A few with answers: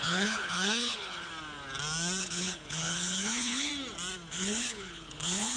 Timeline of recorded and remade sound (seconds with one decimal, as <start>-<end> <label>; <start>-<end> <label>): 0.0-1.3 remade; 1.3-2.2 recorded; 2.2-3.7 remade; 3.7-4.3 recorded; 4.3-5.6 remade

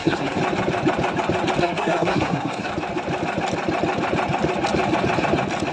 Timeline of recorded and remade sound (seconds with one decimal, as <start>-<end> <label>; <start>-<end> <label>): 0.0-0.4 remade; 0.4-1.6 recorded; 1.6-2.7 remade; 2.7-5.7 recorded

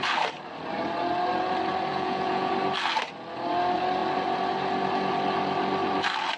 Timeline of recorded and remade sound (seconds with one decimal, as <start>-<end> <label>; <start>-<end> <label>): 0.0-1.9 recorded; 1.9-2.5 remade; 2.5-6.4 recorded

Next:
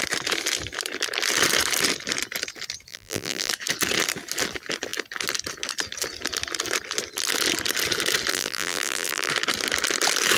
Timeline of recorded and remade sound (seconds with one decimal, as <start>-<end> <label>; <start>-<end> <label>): 0.0-2.9 recorded; 2.9-3.5 remade; 3.5-8.3 recorded; 8.3-9.3 remade; 9.3-10.4 recorded

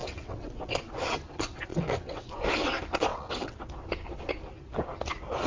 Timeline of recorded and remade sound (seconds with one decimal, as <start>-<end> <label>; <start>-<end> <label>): 0.0-0.6 remade; 0.6-1.7 recorded; 1.7-2.3 remade; 2.3-3.1 recorded; 3.1-3.6 remade; 3.6-5.5 recorded

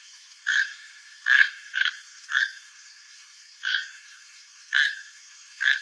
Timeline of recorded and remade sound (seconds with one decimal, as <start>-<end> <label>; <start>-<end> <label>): 0.0-5.8 remade

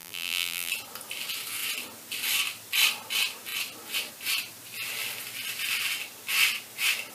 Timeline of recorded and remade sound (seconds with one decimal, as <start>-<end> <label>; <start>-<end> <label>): 0.0-0.7 remade; 0.7-7.1 recorded

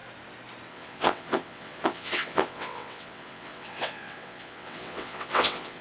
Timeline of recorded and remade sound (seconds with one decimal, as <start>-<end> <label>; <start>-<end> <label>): 0.0-0.7 recorded; 0.7-5.8 remade